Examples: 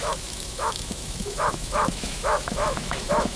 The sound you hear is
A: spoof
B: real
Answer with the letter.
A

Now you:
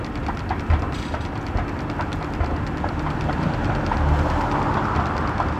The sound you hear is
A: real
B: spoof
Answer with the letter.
A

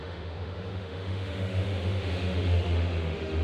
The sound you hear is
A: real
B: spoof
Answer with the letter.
B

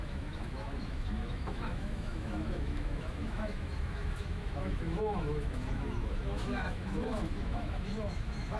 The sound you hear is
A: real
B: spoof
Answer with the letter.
B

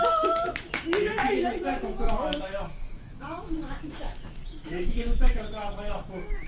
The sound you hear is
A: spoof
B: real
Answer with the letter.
A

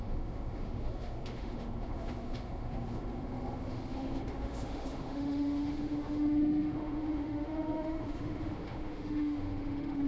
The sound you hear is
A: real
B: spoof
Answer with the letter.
B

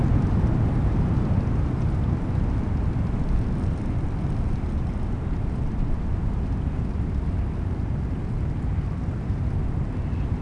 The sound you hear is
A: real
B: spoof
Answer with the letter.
A